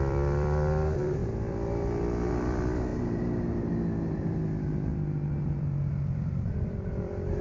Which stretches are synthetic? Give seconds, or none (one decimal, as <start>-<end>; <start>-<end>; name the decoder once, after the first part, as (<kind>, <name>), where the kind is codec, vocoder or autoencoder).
0.0-1.2 (vocoder, BigVGAN v2); 2.3-2.9; 4.2-4.9; 5.9-7.4